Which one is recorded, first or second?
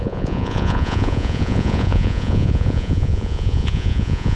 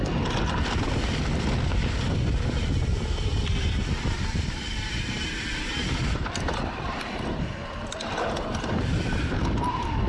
second